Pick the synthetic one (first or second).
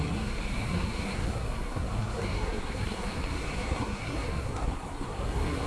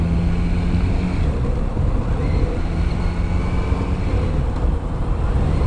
first